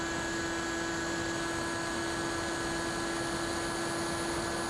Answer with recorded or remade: recorded